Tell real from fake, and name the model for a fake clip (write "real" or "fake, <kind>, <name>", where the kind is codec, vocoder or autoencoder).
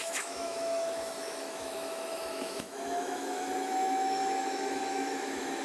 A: fake, autoencoder, DAC-VAE